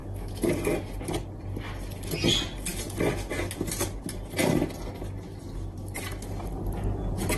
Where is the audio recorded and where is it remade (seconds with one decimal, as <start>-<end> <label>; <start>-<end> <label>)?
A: 0.0-0.5 remade; 0.5-7.4 recorded